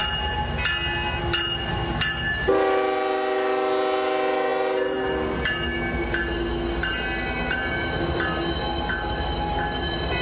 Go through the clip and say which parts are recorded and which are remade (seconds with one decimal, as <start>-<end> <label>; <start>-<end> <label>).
0.0-10.2 recorded